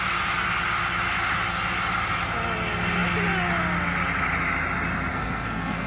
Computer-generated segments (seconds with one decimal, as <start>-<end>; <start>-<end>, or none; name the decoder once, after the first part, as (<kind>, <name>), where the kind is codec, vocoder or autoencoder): 5.1-5.9 (codec, SNAC)